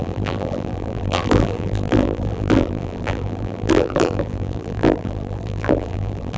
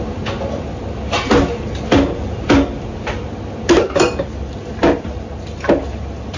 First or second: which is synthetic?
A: first